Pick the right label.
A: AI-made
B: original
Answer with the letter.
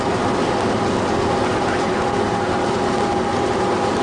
B